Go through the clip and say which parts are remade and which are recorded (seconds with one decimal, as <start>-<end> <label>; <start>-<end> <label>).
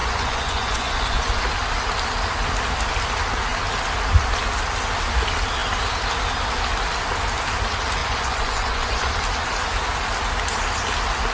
0.0-1.4 remade; 1.4-8.0 recorded; 8.0-9.1 remade; 9.1-11.3 recorded